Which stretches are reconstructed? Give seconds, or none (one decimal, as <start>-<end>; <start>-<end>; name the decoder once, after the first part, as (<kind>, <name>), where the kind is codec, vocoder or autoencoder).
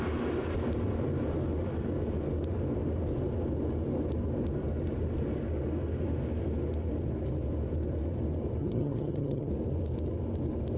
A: 8.6-9.5 (vocoder, HiFi-GAN)